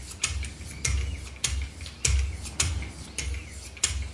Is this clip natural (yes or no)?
yes